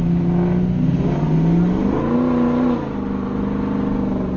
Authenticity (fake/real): real